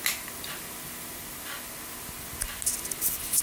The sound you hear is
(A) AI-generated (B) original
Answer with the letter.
B